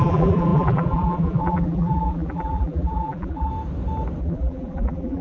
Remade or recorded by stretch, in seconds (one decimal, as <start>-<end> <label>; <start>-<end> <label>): 0.0-3.5 remade; 3.5-4.2 recorded; 4.2-5.2 remade